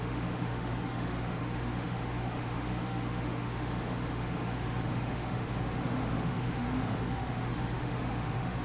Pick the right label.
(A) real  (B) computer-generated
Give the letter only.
B